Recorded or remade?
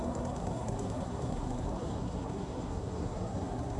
remade